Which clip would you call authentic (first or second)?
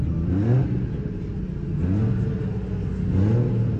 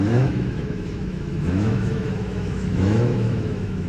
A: first